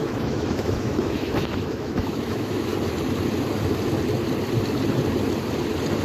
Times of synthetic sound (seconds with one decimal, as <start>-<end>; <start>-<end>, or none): 0.0-2.7